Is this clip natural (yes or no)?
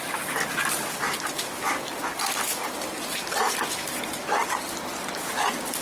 yes